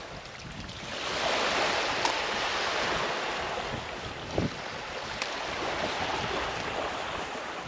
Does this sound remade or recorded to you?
recorded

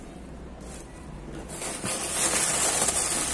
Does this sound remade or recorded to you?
recorded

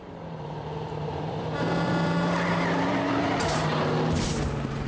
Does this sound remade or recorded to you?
remade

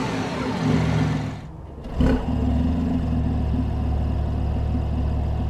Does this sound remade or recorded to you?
recorded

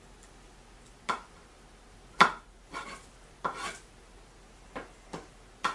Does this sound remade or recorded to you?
recorded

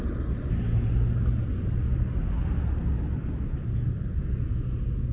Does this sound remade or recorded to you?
recorded